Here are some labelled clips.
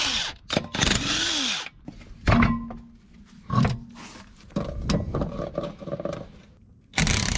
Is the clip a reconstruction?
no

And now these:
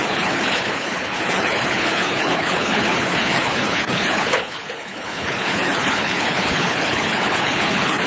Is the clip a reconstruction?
yes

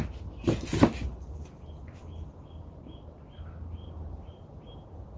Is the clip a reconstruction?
no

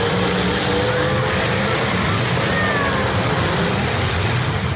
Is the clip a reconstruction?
no